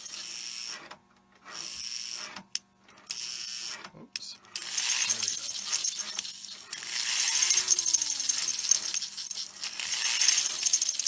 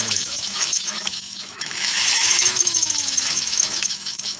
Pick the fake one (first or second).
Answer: second